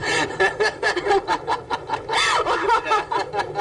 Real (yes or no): yes